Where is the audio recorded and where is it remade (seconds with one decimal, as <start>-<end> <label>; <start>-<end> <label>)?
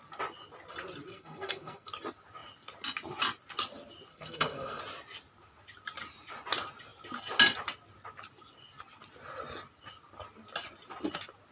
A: 0.0-1.1 recorded; 1.1-1.9 remade; 1.9-4.1 recorded; 4.1-4.8 remade; 4.8-11.5 recorded